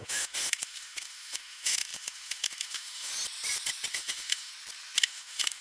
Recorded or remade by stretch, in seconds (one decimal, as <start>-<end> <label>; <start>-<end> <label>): 0.0-3.1 remade; 3.1-3.9 recorded; 3.9-4.5 remade; 4.5-5.0 recorded; 5.0-5.6 remade